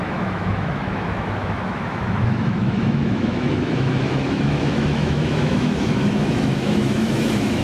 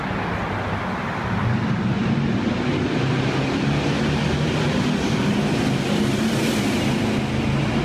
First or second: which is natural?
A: second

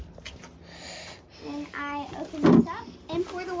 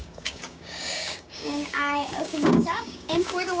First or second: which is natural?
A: first